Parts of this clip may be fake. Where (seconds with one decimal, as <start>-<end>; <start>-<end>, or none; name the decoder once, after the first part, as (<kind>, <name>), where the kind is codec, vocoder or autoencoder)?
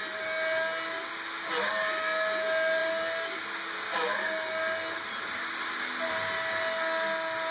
none